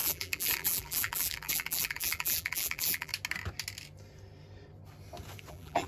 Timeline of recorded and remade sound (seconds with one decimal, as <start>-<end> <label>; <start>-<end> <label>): 0.0-3.1 remade; 3.1-5.5 recorded; 5.5-5.9 remade